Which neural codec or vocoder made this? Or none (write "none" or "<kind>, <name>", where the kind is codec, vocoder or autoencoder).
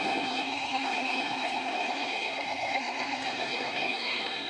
codec, SNAC